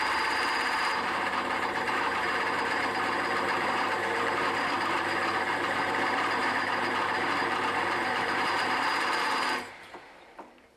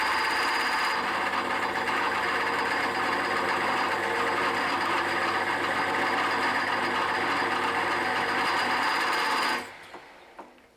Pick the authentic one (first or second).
second